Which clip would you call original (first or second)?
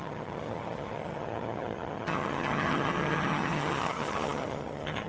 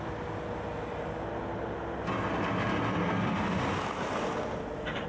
second